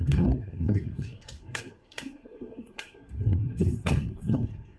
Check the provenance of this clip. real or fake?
fake